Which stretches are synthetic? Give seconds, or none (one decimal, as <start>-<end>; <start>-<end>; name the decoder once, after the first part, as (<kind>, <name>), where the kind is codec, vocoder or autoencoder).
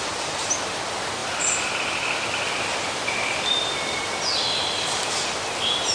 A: none